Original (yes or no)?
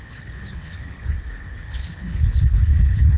no